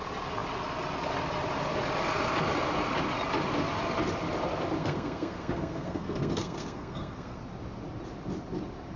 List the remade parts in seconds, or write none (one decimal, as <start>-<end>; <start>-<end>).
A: 4.8-7.4

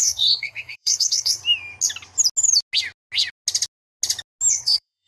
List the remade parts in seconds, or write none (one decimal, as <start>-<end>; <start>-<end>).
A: 0.0-1.4; 4.5-5.1